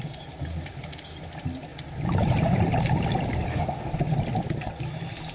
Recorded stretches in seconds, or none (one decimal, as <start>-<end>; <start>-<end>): 0.0-3.5; 4.0-5.3